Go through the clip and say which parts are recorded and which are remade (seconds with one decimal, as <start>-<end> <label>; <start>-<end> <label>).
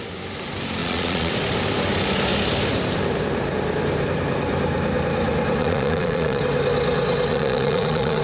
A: 0.0-0.8 recorded; 0.8-1.3 remade; 1.3-5.6 recorded; 5.6-6.4 remade; 6.4-7.3 recorded; 7.3-8.2 remade